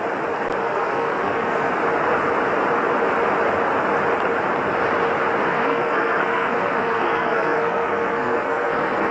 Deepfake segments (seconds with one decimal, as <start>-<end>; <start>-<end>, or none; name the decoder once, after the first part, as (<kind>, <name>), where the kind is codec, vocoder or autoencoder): 0.6-1.7 (codec, SNAC); 5.5-9.1